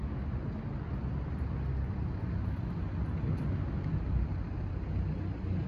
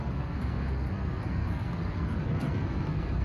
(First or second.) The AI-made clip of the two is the second